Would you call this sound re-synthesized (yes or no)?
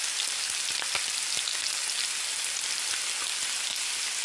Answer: no